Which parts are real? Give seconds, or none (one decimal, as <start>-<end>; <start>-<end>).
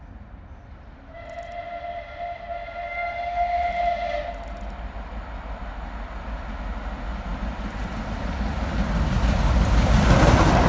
0.0-10.7